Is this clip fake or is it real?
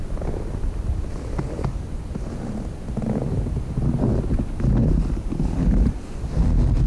real